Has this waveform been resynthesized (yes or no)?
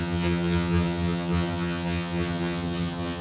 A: yes